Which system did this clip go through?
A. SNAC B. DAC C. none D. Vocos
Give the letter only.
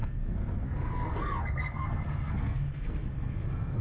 A